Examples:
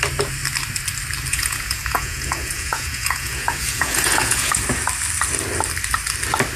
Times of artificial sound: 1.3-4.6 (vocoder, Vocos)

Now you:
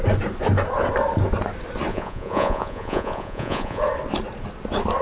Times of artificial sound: 1.9-3.8 (vocoder, Vocos)

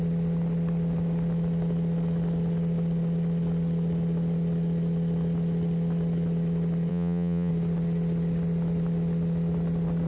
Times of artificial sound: 6.9-7.5 (vocoder, Vocos)

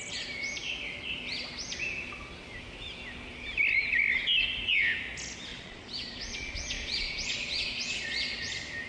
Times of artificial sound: 5.5-8.5 (vocoder, Vocos)

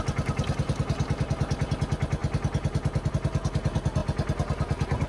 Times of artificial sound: none

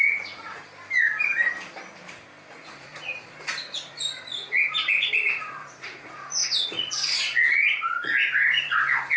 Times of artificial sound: 0.0-0.6 (vocoder, Vocos); 2.5-2.9; 3.4-9.2

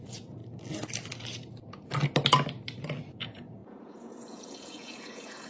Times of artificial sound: 0.0-0.4 (vocoder, Vocos); 3.1-5.5